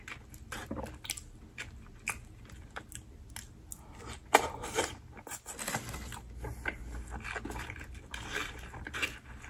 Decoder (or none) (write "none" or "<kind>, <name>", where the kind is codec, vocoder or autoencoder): none